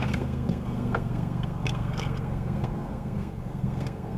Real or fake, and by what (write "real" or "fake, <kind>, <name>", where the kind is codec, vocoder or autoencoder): fake, codec, SNAC